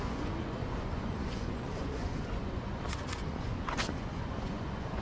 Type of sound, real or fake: fake